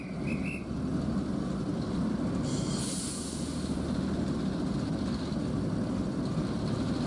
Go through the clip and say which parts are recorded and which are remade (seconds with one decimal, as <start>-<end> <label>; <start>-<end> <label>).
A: 0.0-7.1 recorded